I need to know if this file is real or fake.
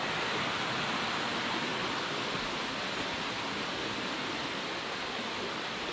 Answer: real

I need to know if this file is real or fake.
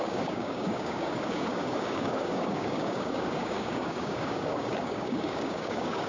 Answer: fake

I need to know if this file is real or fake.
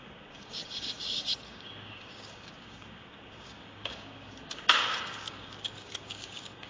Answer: fake